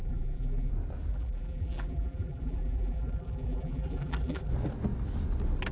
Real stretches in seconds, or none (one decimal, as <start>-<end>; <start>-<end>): 0.7-1.1; 4.5-5.7